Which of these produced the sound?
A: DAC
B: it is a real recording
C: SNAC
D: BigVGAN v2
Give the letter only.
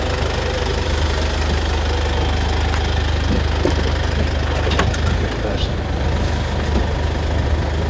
B